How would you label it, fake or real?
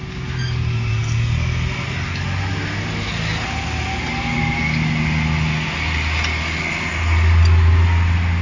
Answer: real